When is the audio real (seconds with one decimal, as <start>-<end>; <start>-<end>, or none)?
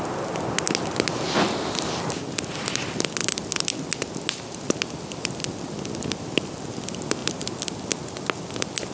0.0-8.9